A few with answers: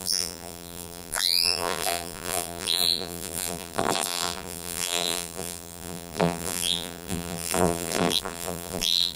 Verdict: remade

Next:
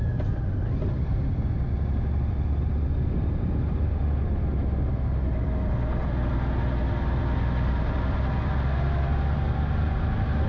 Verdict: recorded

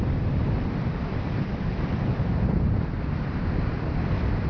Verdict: remade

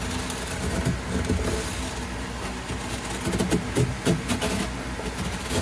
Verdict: recorded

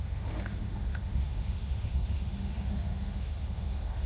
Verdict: remade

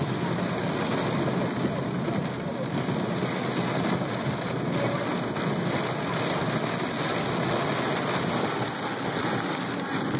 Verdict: recorded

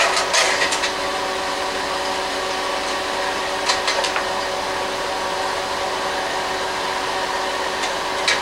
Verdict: recorded